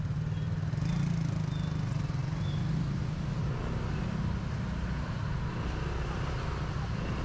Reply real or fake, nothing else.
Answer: real